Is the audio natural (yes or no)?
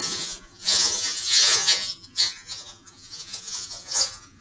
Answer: no